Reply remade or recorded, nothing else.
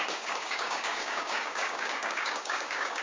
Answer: remade